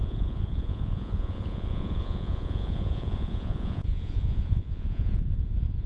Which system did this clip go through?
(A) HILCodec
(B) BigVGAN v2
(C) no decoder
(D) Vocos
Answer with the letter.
D